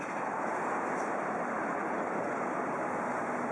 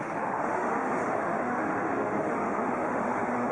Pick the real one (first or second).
first